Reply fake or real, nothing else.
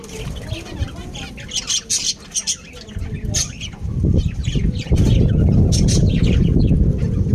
real